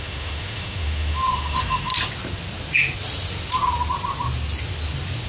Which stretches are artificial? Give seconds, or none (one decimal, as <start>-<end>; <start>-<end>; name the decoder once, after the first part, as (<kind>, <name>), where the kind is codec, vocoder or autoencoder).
0.0-1.9 (autoencoder, DAC-VAE)